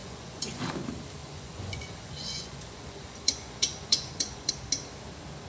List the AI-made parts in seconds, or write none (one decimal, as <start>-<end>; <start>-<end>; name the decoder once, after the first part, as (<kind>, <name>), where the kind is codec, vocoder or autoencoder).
0.0-0.6 (vocoder, Vocos); 1.2-4.5